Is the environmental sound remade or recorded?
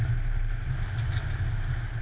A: recorded